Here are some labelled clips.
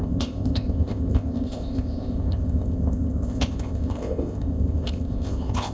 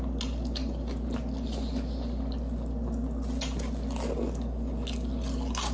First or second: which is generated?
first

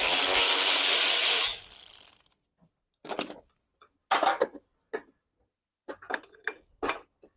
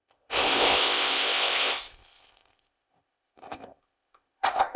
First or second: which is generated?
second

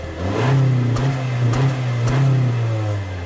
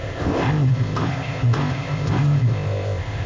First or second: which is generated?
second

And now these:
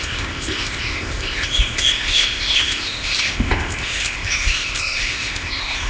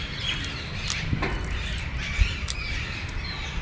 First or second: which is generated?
first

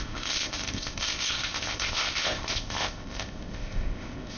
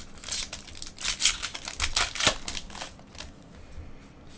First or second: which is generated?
first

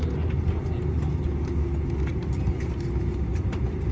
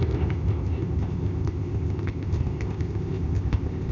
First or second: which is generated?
second